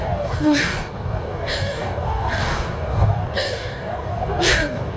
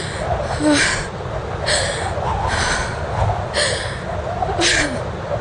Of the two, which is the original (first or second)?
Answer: second